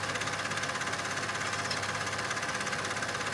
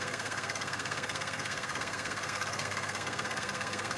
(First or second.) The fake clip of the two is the second